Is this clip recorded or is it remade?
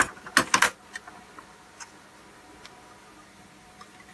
recorded